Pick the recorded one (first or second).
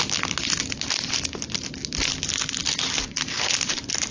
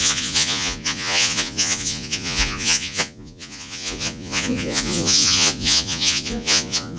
first